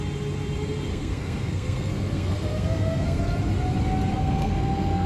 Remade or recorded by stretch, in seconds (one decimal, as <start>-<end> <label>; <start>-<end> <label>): 0.0-0.9 recorded; 0.9-3.4 remade; 3.4-4.1 recorded; 4.1-5.1 remade